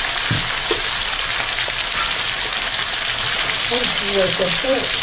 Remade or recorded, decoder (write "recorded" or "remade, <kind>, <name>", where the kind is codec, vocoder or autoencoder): remade, vocoder, BigVGAN v2